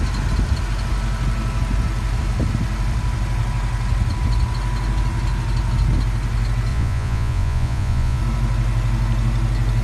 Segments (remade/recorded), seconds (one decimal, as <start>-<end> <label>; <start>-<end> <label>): 0.0-6.7 recorded; 6.7-8.2 remade; 8.2-9.8 recorded